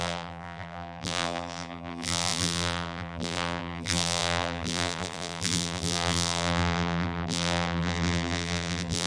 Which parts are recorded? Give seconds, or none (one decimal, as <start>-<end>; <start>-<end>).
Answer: none